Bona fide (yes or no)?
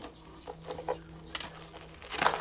yes